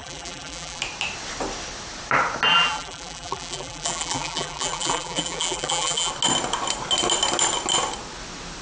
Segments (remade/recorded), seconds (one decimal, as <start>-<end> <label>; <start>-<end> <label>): 0.0-0.8 remade; 0.8-2.5 recorded; 2.5-6.1 remade; 6.1-8.6 recorded